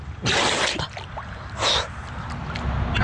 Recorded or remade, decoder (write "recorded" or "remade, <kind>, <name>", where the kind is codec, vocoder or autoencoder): recorded